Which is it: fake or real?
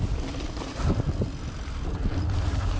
real